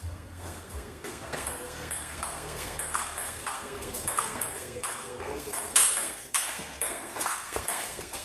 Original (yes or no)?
no